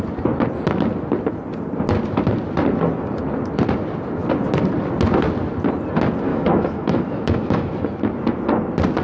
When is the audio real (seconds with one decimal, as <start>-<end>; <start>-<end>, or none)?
0.0-6.3; 7.7-9.0